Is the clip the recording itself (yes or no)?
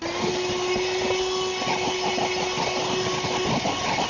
yes